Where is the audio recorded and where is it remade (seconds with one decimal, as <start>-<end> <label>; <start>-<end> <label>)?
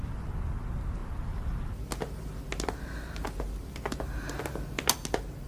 0.0-5.5 recorded